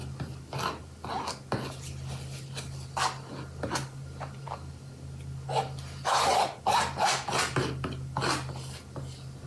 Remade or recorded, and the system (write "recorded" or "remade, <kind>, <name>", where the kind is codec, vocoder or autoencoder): recorded